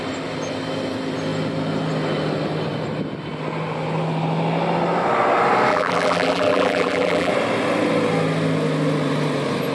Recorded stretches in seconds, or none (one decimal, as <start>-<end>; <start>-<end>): 0.0-5.7; 7.3-9.7